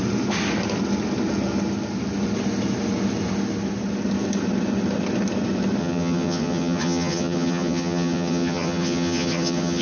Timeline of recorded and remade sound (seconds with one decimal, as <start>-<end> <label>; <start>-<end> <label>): 0.0-5.8 recorded; 5.8-9.8 remade